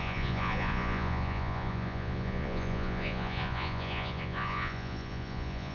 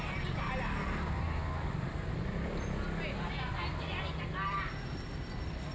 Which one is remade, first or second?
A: first